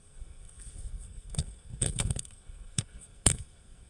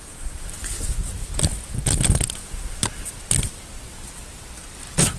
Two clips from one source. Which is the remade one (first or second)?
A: first